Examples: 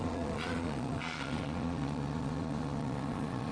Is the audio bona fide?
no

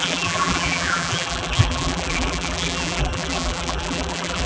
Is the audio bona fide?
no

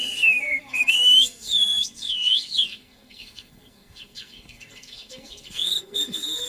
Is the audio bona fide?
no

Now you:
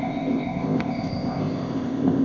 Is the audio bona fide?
no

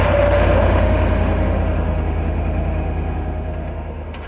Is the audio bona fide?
no